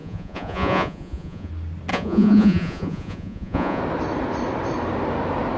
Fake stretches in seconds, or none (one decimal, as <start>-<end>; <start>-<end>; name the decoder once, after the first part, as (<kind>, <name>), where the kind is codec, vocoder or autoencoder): 0.0-1.5 (vocoder, Vocos); 1.9-3.8